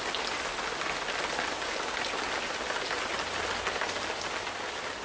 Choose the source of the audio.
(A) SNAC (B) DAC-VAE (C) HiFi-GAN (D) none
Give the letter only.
D